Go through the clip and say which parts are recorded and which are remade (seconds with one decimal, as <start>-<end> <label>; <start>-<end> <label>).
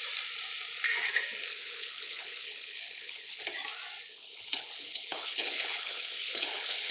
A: 0.0-1.5 recorded; 1.5-3.4 remade; 3.4-4.1 recorded; 4.1-6.9 remade